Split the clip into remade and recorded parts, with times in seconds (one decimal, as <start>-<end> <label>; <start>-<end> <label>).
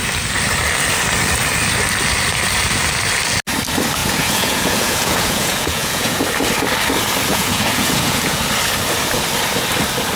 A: 0.0-4.0 recorded; 4.0-6.2 remade; 6.2-7.3 recorded; 7.3-8.4 remade; 8.4-10.2 recorded